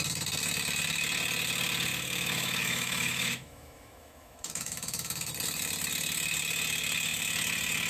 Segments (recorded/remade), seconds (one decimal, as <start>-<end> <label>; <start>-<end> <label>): 0.0-1.9 recorded; 1.9-5.3 remade; 5.3-7.9 recorded